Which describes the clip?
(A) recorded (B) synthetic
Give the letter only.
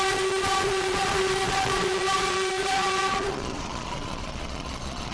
B